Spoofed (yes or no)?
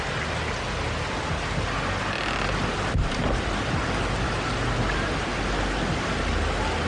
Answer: no